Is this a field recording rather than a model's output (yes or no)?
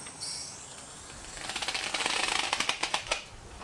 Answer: no